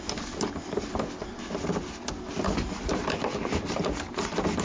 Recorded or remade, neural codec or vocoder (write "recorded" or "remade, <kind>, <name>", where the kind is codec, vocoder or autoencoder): recorded